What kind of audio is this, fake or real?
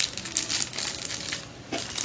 real